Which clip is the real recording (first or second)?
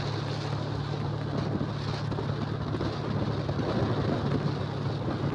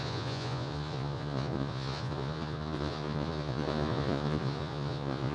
first